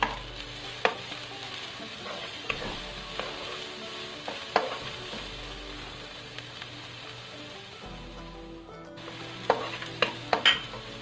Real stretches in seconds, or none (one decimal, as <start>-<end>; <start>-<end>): 0.0-1.9; 2.8-11.0